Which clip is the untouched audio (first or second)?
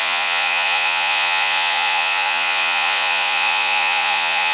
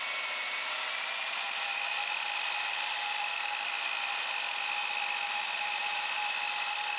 second